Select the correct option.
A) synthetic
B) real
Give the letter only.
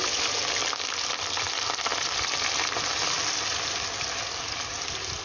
B